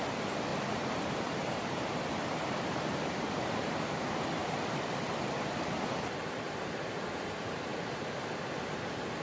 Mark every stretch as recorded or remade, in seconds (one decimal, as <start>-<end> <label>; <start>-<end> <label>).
0.0-0.5 recorded; 0.5-3.7 remade; 3.7-4.4 recorded; 4.4-8.7 remade; 8.7-9.2 recorded